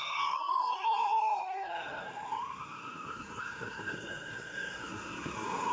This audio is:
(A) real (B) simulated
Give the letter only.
B